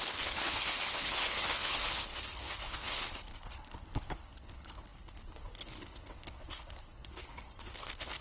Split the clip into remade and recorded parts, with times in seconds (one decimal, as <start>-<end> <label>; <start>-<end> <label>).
0.0-8.2 remade